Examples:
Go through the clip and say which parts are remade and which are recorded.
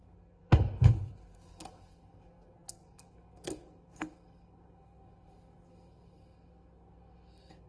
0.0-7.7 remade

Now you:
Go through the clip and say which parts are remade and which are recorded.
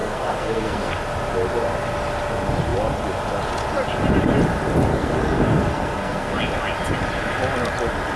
0.0-0.9 remade; 0.9-4.9 recorded; 4.9-6.3 remade; 6.3-8.2 recorded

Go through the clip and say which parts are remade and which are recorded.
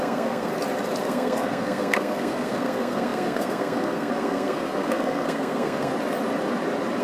0.0-0.5 remade; 0.5-1.0 recorded; 1.0-5.9 remade; 5.9-7.0 recorded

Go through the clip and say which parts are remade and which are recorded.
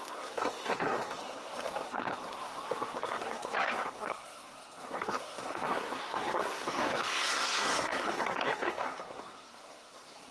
0.0-10.3 remade